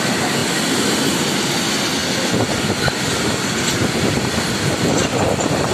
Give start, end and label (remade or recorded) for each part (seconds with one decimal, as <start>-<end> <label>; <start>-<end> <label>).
0.0-5.7 recorded